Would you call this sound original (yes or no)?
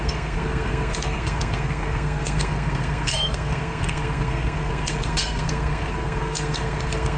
no